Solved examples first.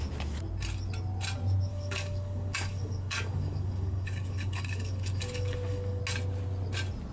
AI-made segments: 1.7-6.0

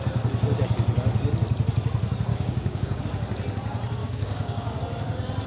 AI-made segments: 2.3-3.0; 4.0-4.8